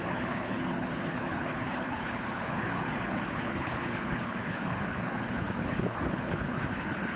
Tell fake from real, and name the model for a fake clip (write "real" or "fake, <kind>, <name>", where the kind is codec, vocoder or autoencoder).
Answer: fake, codec, HILCodec